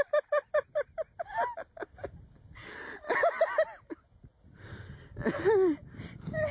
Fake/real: real